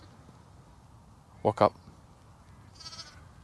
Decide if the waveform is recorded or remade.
recorded